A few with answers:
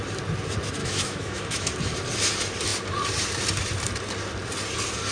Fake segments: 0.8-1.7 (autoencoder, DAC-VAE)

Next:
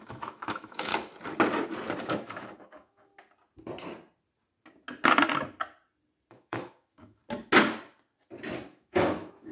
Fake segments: 0.0-0.9 (autoencoder, DAC-VAE); 2.0-3.1; 6.3-7.2; 8.7-9.5